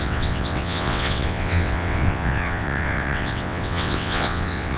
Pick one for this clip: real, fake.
fake